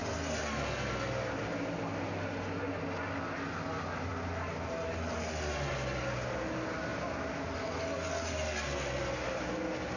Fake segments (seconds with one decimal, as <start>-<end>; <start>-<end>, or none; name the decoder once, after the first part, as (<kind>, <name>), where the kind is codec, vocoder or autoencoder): none